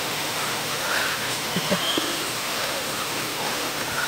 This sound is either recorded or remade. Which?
remade